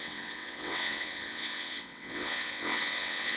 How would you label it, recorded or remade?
remade